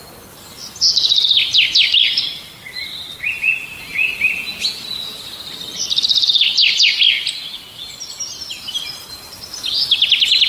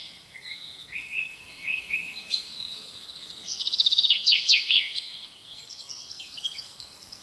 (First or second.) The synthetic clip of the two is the second